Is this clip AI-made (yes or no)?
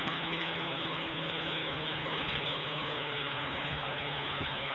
yes